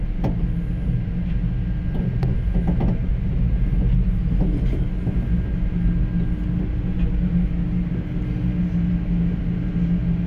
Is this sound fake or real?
real